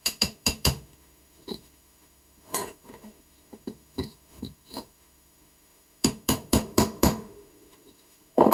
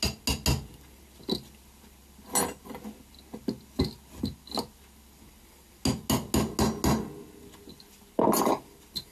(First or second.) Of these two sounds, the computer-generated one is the first